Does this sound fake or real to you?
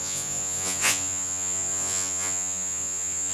fake